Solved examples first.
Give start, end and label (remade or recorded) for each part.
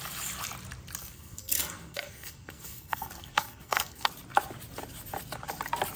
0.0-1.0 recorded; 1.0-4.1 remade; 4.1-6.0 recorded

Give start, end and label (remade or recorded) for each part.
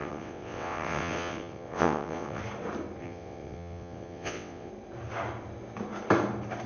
0.0-2.4 remade; 2.4-3.0 recorded; 3.0-4.7 remade; 4.7-6.7 recorded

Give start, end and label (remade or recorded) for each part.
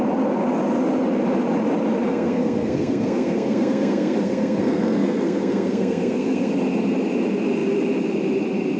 0.0-2.1 recorded; 2.1-6.5 remade; 6.5-8.8 recorded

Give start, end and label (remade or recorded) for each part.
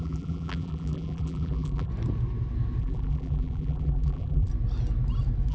0.0-1.9 remade; 1.9-2.8 recorded; 2.8-4.5 remade; 4.5-5.5 recorded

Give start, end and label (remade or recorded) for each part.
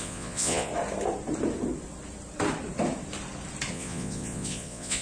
0.0-0.7 remade; 0.7-3.7 recorded; 3.7-5.0 remade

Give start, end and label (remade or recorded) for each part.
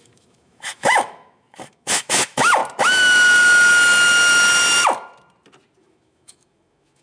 0.0-2.6 remade; 2.6-5.8 recorded; 5.8-7.0 remade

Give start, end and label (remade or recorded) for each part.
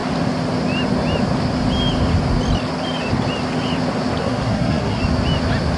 0.0-4.2 recorded; 4.2-5.0 remade; 5.0-5.8 recorded